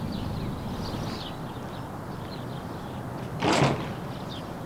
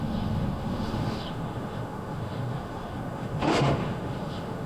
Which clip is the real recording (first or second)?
first